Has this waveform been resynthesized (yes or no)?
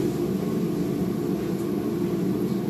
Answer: no